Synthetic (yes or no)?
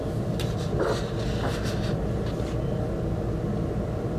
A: no